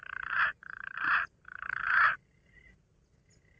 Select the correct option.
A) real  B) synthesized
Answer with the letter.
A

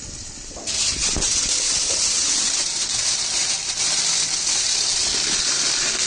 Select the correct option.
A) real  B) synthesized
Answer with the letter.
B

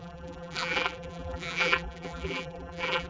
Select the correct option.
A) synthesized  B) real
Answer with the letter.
A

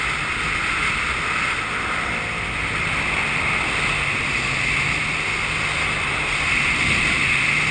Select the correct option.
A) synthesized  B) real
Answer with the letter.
B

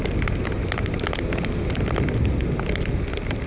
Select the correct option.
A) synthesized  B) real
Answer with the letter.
B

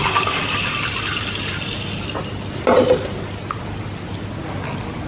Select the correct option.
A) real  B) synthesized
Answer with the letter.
A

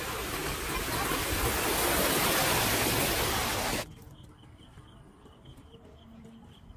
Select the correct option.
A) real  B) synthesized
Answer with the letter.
A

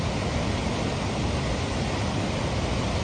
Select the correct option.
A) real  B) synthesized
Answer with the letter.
A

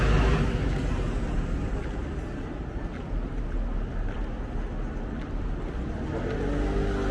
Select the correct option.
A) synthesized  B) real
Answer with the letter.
B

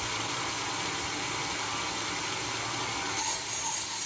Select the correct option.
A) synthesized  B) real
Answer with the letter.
B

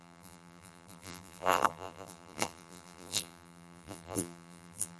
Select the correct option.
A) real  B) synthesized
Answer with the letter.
B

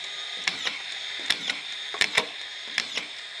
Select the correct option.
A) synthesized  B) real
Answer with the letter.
A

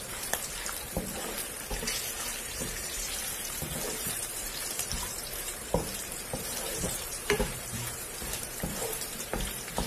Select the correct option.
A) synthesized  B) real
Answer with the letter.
A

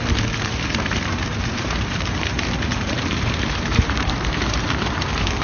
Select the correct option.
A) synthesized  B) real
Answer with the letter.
A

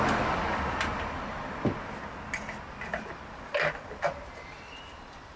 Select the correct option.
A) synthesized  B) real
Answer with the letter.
B